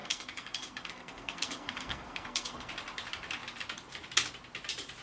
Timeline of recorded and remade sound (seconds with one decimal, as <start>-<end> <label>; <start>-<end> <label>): 0.0-2.7 remade; 2.7-5.0 recorded